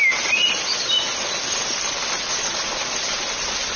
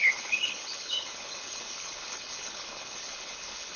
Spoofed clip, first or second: second